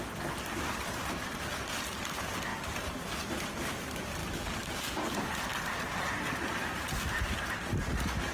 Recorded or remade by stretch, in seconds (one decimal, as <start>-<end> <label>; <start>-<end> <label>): 0.0-4.2 recorded; 4.2-4.8 remade; 4.8-8.3 recorded